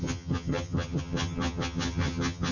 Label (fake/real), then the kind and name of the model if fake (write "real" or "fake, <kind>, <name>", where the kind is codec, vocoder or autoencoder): fake, vocoder, HiFi-GAN